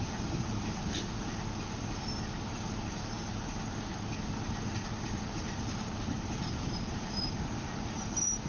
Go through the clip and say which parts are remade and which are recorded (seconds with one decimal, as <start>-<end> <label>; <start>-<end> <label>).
0.0-3.9 remade; 3.9-4.8 recorded; 4.8-8.5 remade